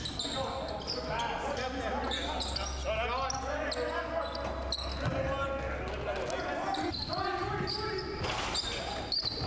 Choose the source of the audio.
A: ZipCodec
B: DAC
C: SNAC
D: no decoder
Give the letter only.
D